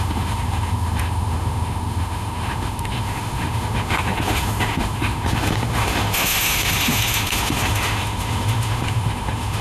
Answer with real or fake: fake